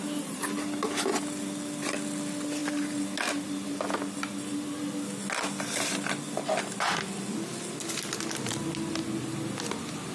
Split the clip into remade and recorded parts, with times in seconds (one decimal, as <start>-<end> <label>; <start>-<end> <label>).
0.0-10.1 recorded